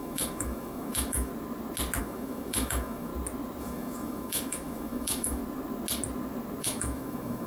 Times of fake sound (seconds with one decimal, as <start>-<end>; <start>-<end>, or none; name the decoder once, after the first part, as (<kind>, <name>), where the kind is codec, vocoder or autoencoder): 0.0-1.3 (autoencoder, DAC-VAE); 2.0-3.1; 3.6-5.4; 6.6-7.5